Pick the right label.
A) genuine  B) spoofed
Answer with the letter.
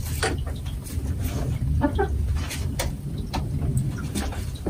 A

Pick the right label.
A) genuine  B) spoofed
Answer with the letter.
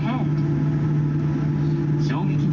A